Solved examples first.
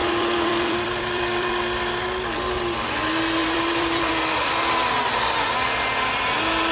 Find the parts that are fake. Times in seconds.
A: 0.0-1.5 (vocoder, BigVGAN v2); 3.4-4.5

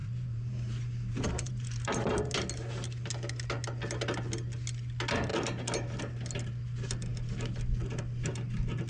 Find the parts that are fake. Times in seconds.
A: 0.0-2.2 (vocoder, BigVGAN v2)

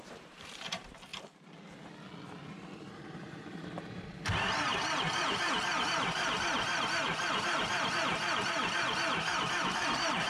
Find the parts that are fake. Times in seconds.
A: 0.0-1.1 (vocoder, BigVGAN v2); 2.4-8.6; 9.3-10.3

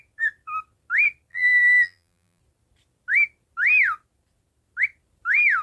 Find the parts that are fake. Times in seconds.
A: 1.3-2.4 (vocoder, BigVGAN v2)

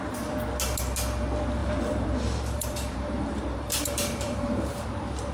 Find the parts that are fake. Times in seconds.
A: 1.6-4.8 (vocoder, BigVGAN v2)

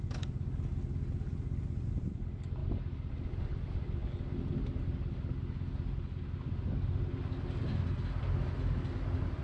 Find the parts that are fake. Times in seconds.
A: none

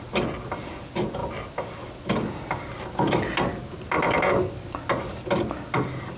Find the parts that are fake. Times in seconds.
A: none

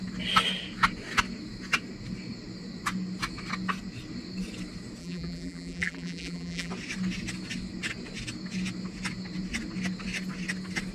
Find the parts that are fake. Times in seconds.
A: 5.0-6.7 (vocoder, BigVGAN v2)